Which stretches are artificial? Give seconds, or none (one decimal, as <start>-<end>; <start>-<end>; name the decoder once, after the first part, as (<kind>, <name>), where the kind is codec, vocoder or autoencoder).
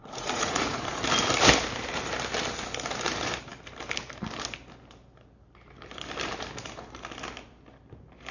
0.0-0.8 (vocoder, Vocos)